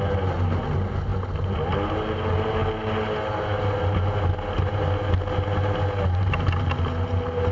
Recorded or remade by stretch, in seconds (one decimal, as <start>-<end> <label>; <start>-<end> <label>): 0.0-7.5 recorded